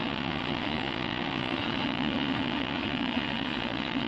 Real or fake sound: fake